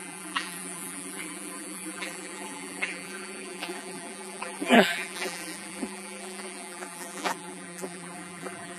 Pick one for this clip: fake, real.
fake